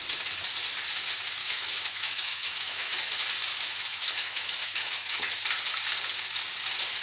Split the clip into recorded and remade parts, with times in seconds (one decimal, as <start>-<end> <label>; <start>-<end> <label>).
0.0-1.4 recorded; 1.4-3.0 remade; 3.0-3.5 recorded; 3.5-5.2 remade; 5.2-7.0 recorded